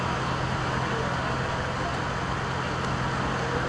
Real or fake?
real